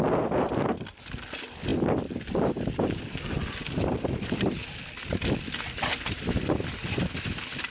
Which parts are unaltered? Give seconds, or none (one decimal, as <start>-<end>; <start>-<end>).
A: 0.0-7.7

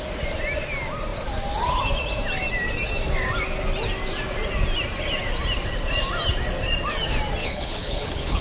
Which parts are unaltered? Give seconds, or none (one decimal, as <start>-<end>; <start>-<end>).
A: 0.0-7.4

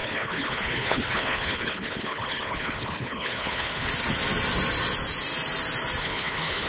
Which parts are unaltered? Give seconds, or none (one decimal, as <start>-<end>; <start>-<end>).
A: 3.9-6.0

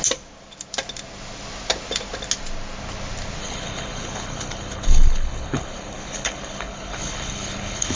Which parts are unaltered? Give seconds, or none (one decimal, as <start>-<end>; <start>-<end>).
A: 0.0-3.4

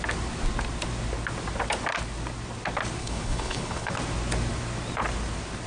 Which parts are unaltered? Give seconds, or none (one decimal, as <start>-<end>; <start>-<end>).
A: 0.0-3.0; 3.9-5.7